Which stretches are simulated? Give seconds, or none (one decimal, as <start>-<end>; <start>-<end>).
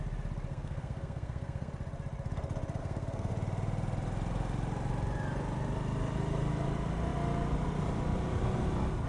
0.5-1.7; 2.8-3.3